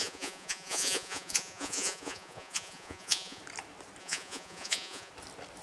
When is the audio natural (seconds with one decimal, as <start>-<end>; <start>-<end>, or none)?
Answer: 3.4-4.0; 5.1-5.6